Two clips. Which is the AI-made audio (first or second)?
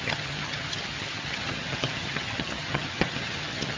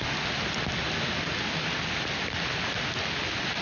first